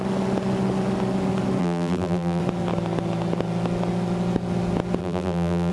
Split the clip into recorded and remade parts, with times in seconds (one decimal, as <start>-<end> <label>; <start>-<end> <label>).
0.0-1.6 recorded; 1.6-2.4 remade; 2.4-5.0 recorded; 5.0-5.7 remade